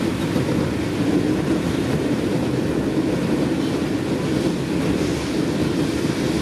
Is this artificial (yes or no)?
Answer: no